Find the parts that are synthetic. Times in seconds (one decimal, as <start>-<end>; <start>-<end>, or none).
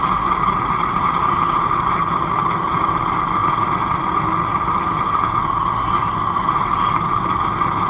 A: 3.4-5.1